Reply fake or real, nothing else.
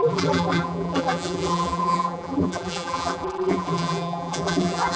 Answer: fake